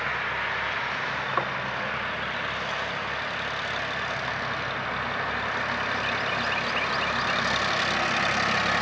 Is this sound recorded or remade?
recorded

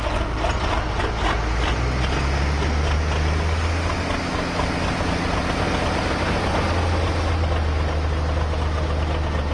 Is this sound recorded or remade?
recorded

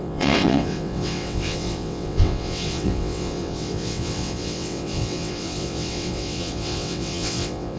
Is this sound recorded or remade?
remade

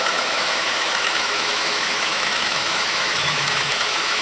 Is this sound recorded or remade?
remade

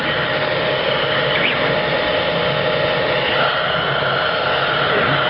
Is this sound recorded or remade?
recorded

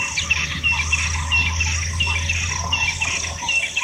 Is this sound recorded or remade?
recorded